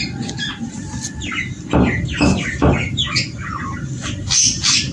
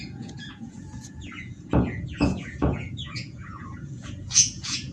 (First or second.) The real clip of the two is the first